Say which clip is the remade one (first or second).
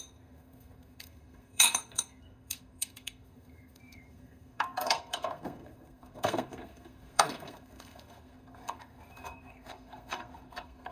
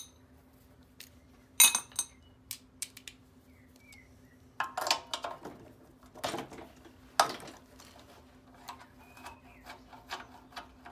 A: first